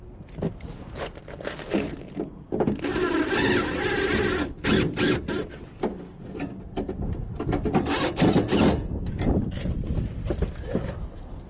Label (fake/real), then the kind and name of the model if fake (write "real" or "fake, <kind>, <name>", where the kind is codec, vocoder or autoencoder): real